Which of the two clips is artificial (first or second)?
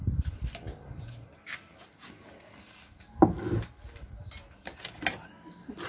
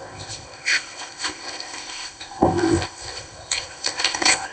second